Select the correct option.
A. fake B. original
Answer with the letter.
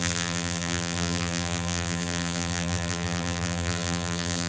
A